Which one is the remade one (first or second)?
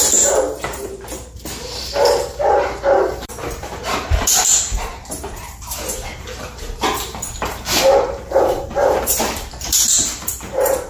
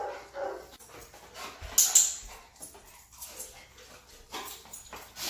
first